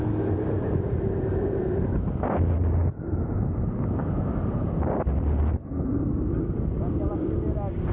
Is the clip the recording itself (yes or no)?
yes